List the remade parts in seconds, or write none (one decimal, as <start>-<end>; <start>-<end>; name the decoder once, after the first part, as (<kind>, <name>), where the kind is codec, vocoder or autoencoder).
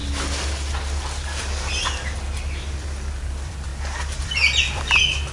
3.2-3.7 (vocoder, BigVGAN v2); 4.2-5.3